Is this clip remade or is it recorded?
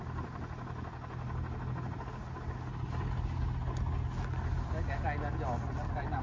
recorded